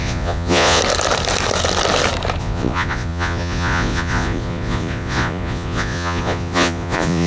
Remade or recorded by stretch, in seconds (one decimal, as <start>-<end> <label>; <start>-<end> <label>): 0.0-0.8 remade; 0.8-2.4 recorded; 2.4-7.3 remade